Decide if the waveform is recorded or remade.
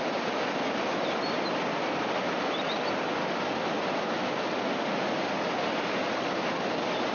recorded